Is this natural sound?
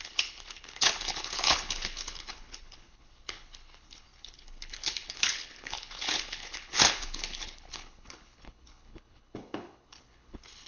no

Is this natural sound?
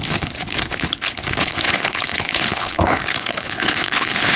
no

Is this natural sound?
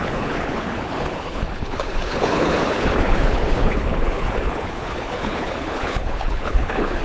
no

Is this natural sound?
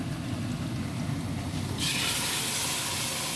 yes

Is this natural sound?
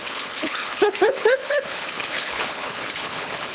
no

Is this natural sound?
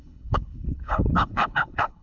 no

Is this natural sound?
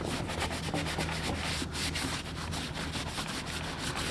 yes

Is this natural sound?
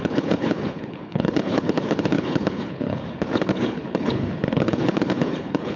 no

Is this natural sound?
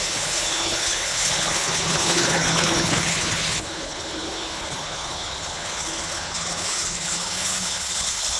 no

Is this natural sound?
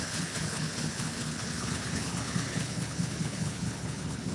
no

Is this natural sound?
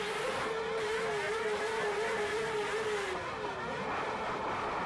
yes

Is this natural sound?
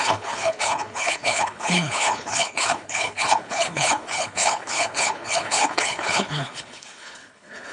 no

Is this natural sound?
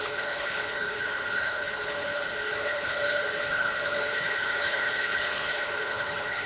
no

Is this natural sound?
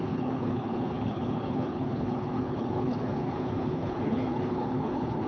no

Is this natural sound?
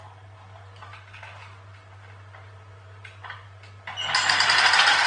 yes